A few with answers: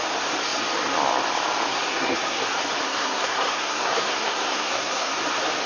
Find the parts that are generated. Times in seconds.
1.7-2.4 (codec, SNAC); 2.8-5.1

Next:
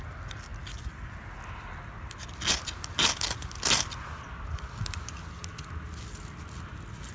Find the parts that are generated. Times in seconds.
none

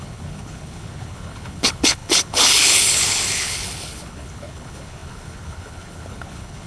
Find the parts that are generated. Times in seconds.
0.0-6.7 (codec, HILCodec)

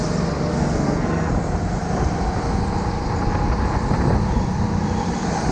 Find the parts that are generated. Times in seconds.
0.5-1.3 (codec, SNAC)

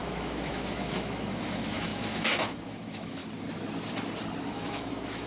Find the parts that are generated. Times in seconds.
0.0-3.2 (autoencoder, DAC-VAE); 4.4-5.3

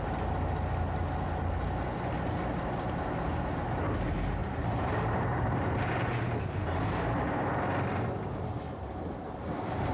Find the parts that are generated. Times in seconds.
4.4-6.1 (vocoder, BigVGAN v2)

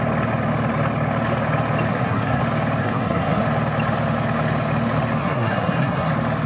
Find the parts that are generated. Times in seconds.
1.9-2.4 (codec, SNAC); 2.8-3.4; 5.2-6.1